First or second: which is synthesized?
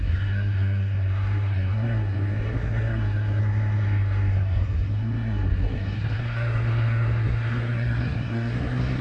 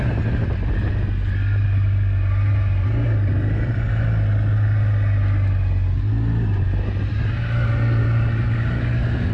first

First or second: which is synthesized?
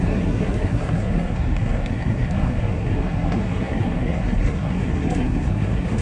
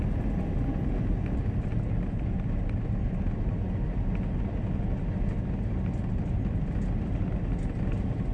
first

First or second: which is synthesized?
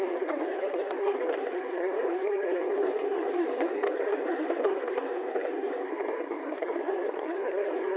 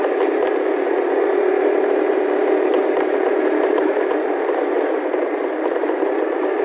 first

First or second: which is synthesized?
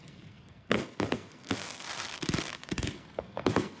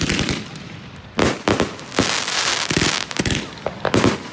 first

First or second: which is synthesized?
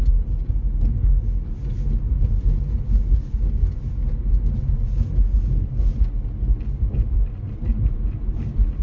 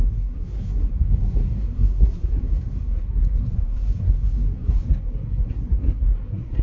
second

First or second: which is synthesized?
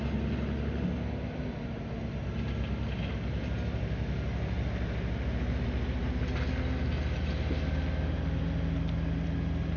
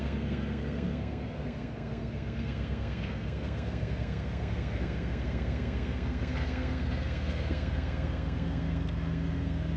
second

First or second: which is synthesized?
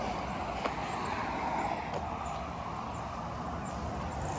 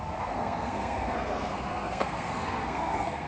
second